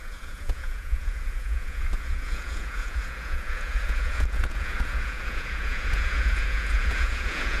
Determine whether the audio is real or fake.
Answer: fake